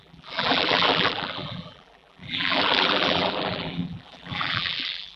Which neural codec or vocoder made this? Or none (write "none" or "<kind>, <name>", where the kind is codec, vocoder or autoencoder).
vocoder, BigVGAN v2